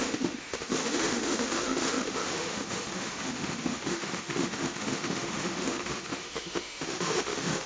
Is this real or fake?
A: fake